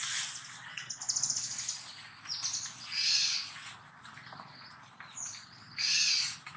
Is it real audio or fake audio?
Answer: real